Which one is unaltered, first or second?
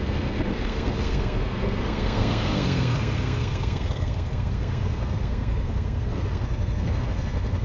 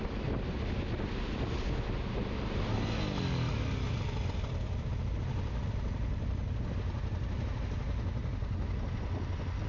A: second